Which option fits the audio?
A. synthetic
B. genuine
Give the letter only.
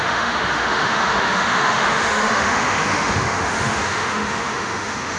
A